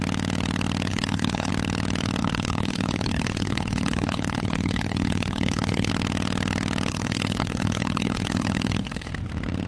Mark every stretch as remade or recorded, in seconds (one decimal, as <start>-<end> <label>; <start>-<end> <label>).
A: 0.0-0.9 recorded; 0.9-1.5 remade; 1.5-2.2 recorded; 2.2-5.9 remade; 5.9-6.9 recorded; 6.9-9.1 remade; 9.1-9.7 recorded